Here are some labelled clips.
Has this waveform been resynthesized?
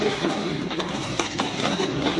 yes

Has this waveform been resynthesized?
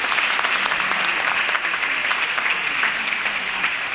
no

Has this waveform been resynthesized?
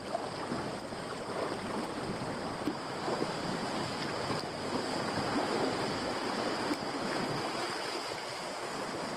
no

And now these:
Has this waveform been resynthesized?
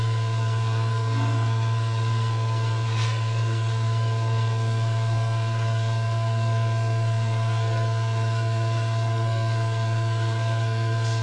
yes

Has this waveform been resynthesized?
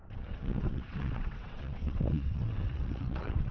yes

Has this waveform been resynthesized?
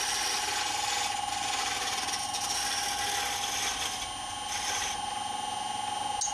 no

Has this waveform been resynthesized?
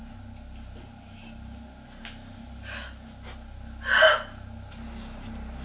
no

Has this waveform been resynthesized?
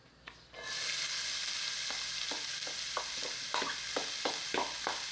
no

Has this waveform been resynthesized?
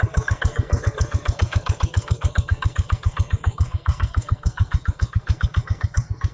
yes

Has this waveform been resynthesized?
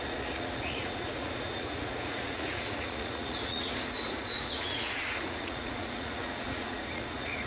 yes